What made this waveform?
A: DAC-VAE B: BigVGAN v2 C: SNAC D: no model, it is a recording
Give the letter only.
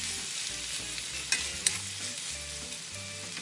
D